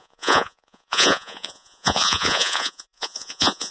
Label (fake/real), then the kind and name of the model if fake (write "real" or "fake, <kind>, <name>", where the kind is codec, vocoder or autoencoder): fake, vocoder, Vocos